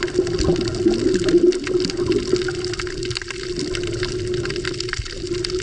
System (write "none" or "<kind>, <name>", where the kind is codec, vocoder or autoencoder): none